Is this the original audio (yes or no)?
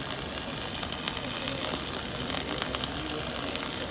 yes